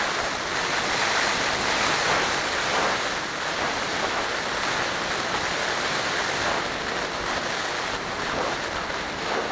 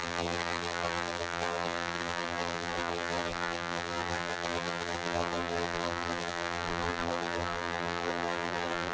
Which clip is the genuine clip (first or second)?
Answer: first